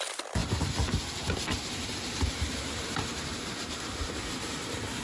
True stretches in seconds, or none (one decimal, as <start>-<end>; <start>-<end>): 0.0-0.4; 3.4-5.0